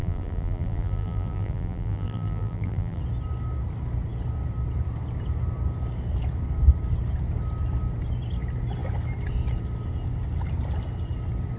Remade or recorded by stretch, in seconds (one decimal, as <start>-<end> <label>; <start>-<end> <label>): 0.0-3.0 remade; 3.0-11.6 recorded